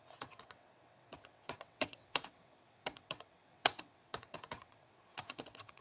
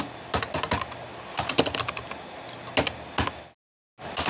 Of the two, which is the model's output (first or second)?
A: first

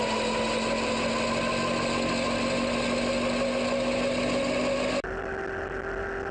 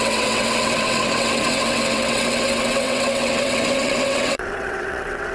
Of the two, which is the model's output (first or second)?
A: second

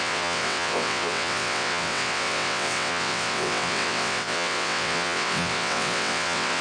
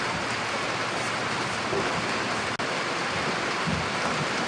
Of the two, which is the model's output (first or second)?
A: first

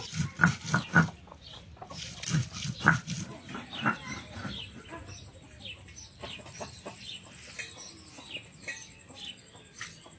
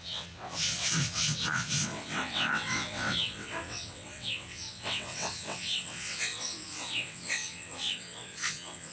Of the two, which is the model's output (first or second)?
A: second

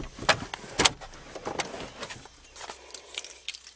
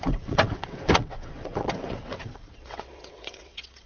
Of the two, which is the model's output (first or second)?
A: second